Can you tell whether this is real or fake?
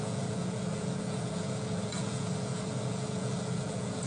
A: fake